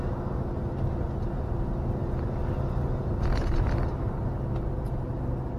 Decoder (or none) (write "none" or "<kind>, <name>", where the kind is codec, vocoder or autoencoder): none